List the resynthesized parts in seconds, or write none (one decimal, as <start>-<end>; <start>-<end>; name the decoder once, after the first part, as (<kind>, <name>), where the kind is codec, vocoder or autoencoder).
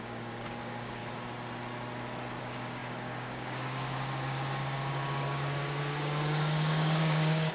0.0-1.0 (codec, DAC); 2.4-7.5